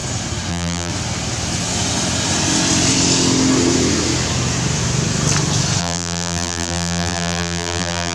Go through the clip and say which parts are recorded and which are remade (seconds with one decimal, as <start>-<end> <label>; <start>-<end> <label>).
0.0-0.5 recorded; 0.5-0.9 remade; 0.9-5.8 recorded; 5.8-8.1 remade